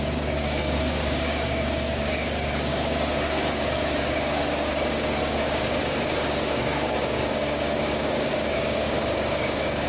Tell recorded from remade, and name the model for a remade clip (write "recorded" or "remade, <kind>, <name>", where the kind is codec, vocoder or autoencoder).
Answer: remade, codec, DAC